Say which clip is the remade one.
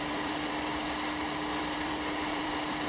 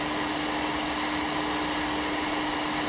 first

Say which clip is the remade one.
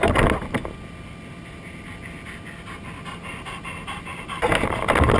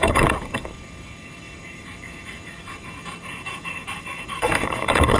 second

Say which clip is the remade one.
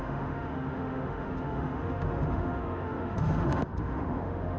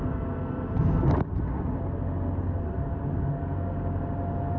first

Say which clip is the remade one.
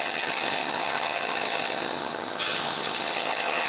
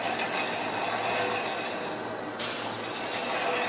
first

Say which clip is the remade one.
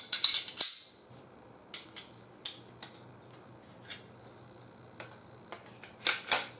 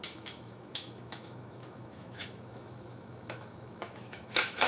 second